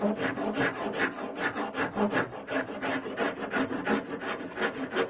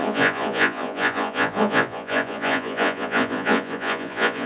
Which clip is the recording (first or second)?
first